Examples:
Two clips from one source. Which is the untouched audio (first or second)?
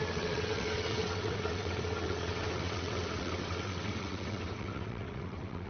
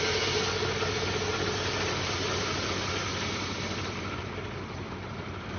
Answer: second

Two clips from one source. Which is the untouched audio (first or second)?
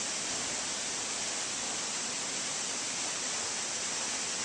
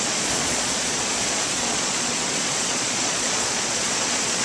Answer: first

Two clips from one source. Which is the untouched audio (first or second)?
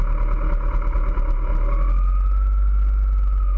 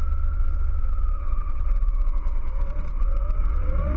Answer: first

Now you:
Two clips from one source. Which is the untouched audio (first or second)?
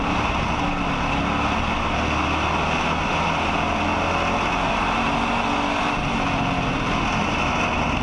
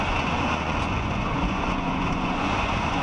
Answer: first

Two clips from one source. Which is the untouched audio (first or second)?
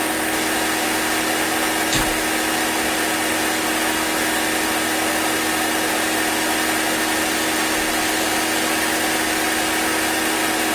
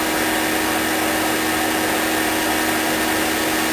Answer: second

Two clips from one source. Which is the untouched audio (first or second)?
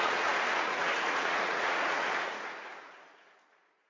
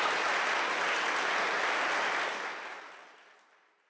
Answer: second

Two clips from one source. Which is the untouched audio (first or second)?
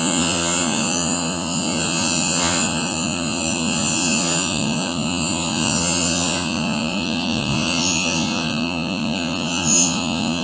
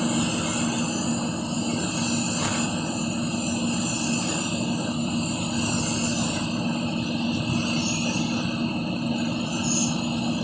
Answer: second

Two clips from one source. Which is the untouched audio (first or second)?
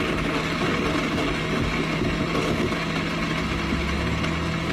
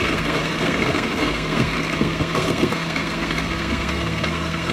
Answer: first